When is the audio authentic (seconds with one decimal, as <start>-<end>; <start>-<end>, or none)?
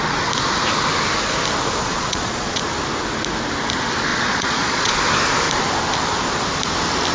0.0-1.8; 2.6-4.1; 4.9-7.1